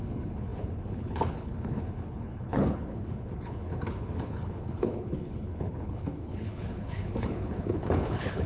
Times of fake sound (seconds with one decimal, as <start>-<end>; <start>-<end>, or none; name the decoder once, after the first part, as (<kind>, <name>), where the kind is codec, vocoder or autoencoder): 0.0-8.5 (codec, HILCodec)